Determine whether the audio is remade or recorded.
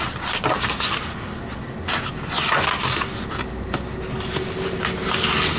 recorded